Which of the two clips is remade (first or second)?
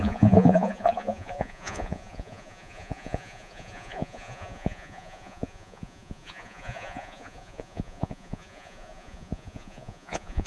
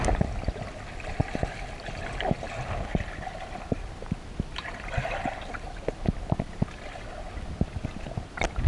first